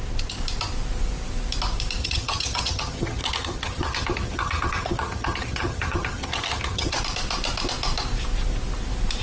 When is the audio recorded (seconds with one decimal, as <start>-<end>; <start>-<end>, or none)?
0.0-2.0; 7.0-9.2